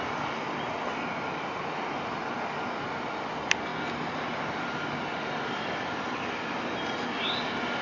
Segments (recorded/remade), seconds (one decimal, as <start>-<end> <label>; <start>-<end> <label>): 0.0-7.8 recorded